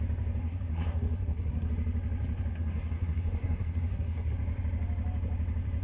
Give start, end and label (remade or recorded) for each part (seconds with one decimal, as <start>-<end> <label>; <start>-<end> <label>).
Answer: 0.0-0.4 recorded; 0.4-1.7 remade; 1.7-2.5 recorded; 2.5-4.3 remade; 4.3-5.8 recorded